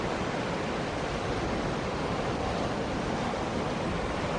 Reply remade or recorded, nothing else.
recorded